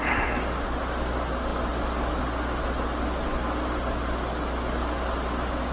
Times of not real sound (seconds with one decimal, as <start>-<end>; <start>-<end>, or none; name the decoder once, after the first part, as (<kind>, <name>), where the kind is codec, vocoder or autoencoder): none